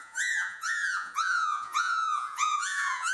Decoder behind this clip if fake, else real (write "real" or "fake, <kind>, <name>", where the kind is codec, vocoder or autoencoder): fake, vocoder, Vocos